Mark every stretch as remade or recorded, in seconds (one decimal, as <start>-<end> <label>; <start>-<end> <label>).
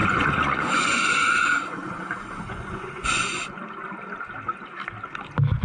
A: 0.0-3.4 remade; 3.4-5.6 recorded